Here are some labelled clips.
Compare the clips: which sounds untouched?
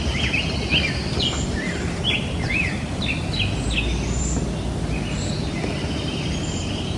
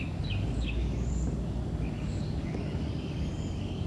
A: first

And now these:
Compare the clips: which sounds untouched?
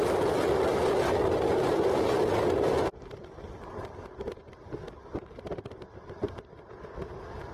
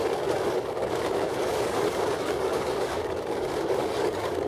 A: first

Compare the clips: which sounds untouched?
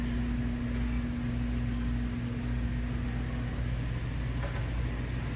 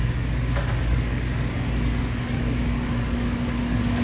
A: first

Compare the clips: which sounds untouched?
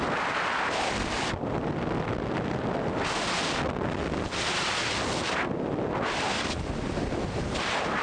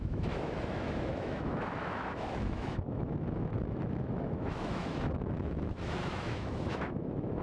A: first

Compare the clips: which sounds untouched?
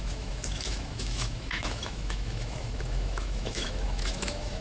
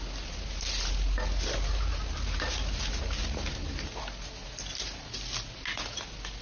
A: second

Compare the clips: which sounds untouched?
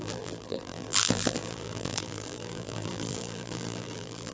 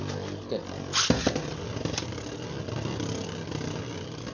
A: second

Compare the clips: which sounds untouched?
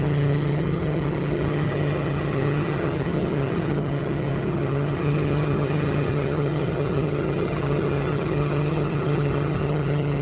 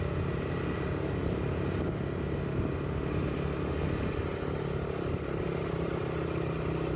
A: second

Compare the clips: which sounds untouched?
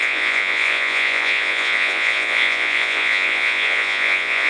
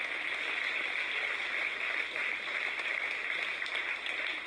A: second